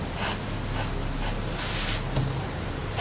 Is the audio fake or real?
real